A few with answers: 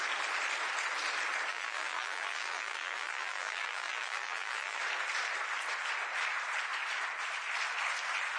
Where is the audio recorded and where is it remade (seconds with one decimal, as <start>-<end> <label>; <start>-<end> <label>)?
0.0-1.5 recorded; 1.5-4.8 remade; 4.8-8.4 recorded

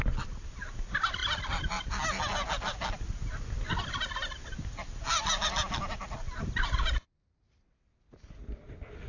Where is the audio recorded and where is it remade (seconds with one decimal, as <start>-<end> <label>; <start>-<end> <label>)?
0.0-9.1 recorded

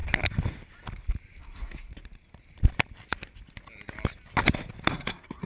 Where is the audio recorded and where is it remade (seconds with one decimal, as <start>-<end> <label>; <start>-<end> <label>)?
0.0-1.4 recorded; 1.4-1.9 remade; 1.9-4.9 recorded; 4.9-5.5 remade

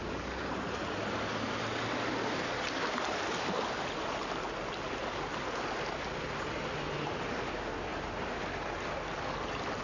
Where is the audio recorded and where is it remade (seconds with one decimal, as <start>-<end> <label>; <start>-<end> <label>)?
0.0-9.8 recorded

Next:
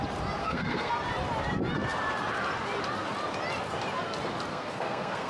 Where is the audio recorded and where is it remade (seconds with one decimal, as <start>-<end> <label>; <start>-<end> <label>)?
0.0-0.4 recorded; 0.4-0.9 remade; 0.9-4.5 recorded; 4.5-5.3 remade

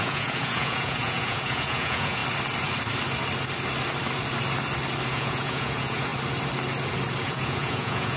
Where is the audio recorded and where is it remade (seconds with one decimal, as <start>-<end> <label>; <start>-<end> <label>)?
0.0-2.2 remade; 2.2-5.1 recorded; 5.1-6.1 remade; 6.1-7.2 recorded; 7.2-8.2 remade

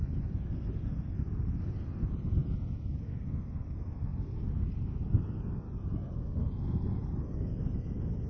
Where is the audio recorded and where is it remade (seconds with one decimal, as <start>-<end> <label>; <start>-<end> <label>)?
0.0-8.3 recorded